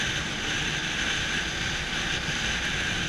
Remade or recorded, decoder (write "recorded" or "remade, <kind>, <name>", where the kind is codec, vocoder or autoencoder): recorded